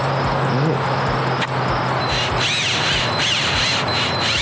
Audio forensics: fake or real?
real